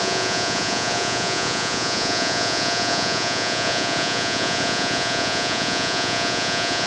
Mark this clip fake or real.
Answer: fake